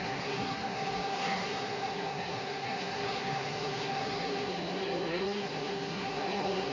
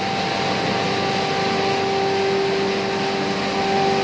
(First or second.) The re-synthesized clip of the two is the first